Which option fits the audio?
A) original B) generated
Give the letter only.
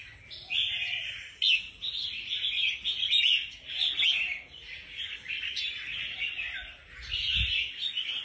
A